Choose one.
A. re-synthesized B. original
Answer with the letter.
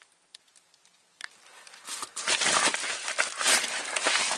B